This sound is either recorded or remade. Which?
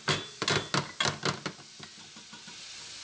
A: recorded